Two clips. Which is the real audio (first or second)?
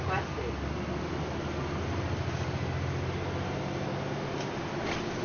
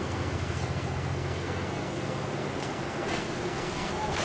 first